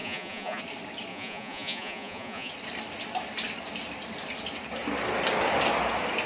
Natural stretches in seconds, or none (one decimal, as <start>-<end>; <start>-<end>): 0.6-1.1; 2.5-6.3